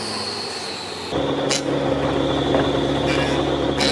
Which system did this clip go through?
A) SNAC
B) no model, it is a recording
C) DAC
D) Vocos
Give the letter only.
B